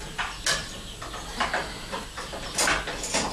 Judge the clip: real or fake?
real